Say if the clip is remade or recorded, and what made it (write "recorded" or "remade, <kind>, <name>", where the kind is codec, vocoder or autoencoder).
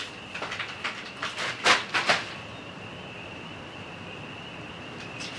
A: recorded